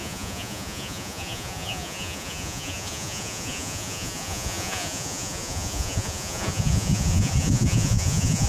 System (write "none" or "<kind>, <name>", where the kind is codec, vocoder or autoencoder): vocoder, Vocos